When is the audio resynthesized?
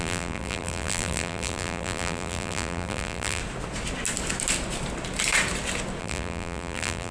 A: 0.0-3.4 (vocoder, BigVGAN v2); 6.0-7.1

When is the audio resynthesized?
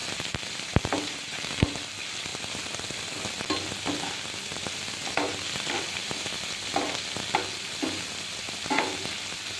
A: 0.0-1.8 (vocoder, BigVGAN v2)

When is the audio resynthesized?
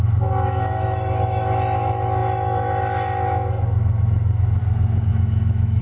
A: 0.0-4.6 (autoencoder, DAC-VAE); 5.1-5.8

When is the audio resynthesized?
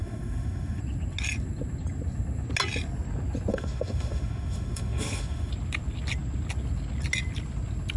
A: 0.0-0.8 (autoencoder, DAC-VAE); 3.5-5.5